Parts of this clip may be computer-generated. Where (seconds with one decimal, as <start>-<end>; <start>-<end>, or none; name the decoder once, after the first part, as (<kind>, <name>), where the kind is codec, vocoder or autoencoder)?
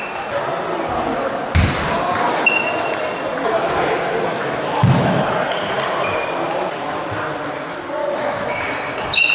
4.3-5.2 (autoencoder, DAC-VAE); 8.0-8.6